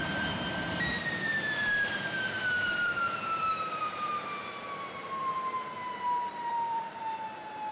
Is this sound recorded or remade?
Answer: remade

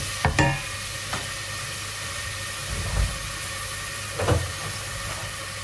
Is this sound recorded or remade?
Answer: recorded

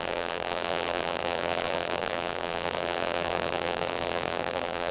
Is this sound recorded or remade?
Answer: remade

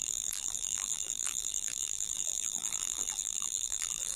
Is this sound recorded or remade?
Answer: remade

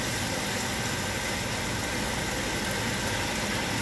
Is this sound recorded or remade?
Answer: recorded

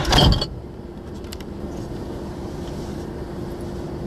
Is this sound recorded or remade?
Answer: remade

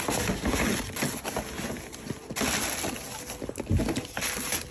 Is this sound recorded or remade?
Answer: recorded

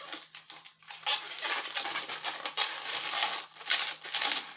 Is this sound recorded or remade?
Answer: recorded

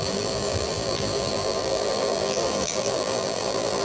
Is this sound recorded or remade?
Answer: remade